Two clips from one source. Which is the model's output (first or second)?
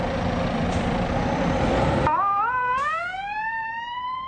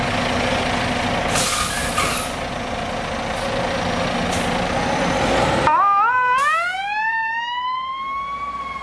first